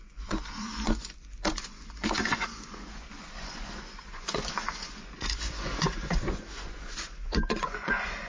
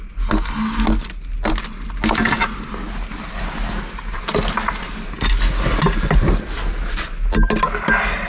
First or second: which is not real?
first